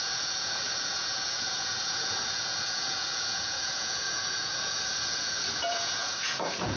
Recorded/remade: remade